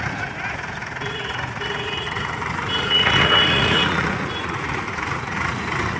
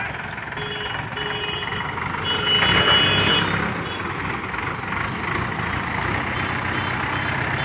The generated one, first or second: first